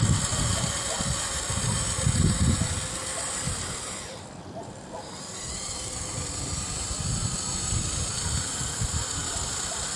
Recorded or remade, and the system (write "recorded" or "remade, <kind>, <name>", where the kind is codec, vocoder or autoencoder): recorded